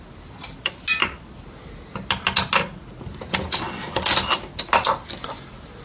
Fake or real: real